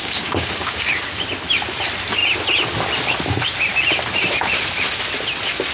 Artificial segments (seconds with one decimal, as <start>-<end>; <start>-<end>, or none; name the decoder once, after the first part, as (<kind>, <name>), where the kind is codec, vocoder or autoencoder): 0.0-1.0 (codec, DAC)